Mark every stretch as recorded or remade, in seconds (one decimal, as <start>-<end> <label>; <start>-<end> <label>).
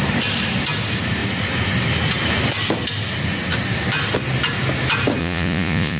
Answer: 0.0-5.2 recorded; 5.2-6.0 remade